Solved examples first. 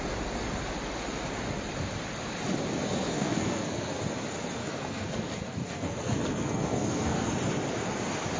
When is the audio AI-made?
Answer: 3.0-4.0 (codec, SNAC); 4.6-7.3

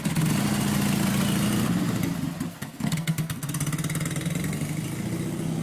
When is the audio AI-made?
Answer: 2.5-3.5 (codec, SNAC)

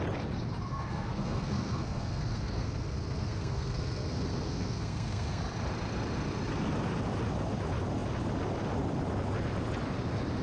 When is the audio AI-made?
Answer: 0.7-5.4 (codec, SNAC)